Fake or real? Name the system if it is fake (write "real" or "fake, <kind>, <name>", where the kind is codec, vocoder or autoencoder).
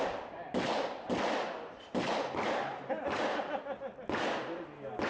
real